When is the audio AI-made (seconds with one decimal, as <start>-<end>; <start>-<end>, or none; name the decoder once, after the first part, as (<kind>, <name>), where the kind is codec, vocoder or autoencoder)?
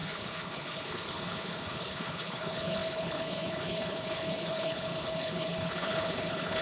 0.0-6.6 (codec, HILCodec)